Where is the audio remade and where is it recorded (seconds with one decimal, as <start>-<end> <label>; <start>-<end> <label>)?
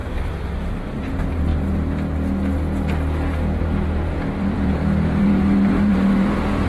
0.0-0.7 recorded; 0.7-1.5 remade; 1.5-3.6 recorded; 3.6-6.7 remade